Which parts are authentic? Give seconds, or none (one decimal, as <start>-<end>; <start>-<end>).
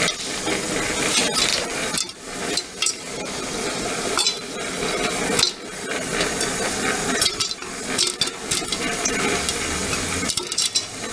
0.0-1.5; 4.6-9.8; 10.4-11.1